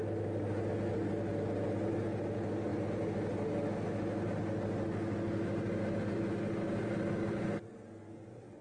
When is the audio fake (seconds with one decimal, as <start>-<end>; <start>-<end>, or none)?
none